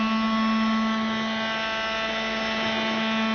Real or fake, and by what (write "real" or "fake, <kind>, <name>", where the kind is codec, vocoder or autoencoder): real